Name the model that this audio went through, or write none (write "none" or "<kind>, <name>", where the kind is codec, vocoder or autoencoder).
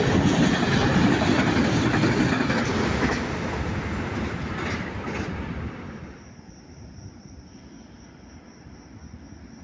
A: none